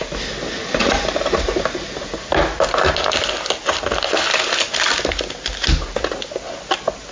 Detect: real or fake real